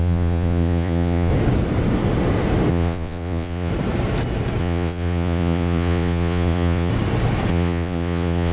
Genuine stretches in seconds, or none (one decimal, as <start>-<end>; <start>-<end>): 1.3-2.7; 3.7-4.6; 6.9-7.5